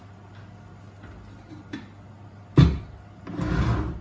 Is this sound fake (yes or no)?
no